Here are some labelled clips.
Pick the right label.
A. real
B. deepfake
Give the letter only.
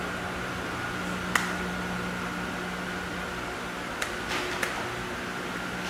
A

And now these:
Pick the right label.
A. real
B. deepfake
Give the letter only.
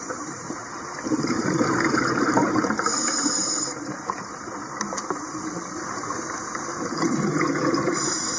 B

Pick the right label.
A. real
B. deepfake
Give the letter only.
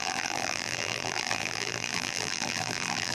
B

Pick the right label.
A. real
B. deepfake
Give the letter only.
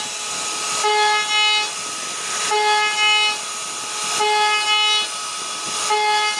A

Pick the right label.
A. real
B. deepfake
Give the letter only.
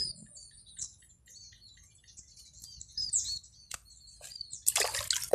A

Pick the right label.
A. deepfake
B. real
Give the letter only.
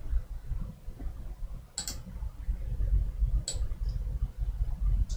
B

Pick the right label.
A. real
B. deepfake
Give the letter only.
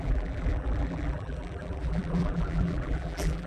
B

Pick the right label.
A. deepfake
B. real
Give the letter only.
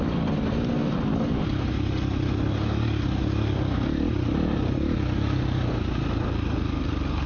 B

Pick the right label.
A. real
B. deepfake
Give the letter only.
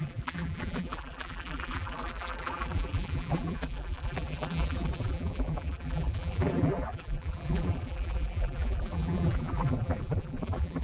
B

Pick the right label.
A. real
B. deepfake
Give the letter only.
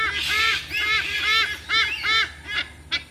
A